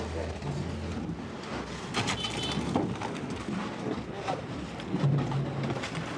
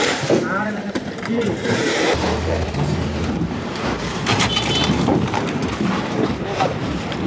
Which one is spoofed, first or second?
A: second